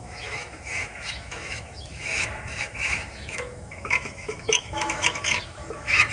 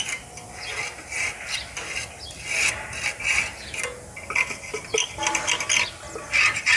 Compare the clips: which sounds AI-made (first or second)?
first